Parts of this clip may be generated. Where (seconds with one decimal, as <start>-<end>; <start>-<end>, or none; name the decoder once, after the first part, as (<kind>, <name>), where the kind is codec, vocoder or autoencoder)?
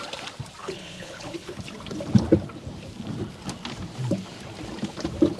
0.6-1.6 (codec, HILCodec)